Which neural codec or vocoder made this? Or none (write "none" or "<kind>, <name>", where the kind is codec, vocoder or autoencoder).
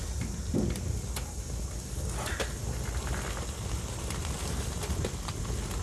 none